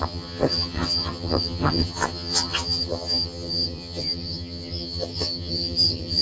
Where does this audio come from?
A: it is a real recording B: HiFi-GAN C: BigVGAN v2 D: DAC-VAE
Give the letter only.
B